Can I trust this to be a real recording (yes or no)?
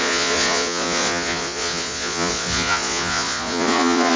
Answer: no